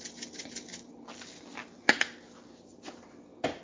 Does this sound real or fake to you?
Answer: real